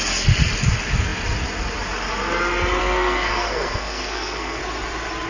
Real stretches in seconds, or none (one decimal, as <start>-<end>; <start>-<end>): 0.0-2.8; 4.6-5.3